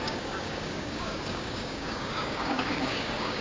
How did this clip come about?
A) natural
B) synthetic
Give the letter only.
B